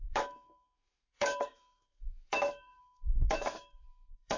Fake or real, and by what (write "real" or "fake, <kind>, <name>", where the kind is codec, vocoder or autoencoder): fake, autoencoder, DAC-VAE